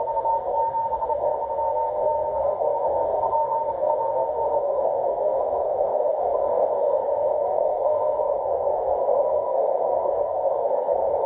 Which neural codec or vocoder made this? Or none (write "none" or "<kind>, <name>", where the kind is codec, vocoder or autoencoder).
codec, SNAC